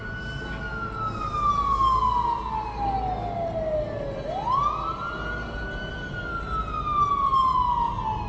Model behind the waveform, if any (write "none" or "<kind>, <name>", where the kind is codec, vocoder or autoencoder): none